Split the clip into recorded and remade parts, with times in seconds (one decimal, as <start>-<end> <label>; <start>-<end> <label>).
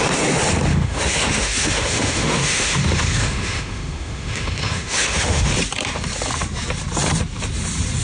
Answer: 0.0-0.7 recorded; 0.7-5.5 remade; 5.5-8.0 recorded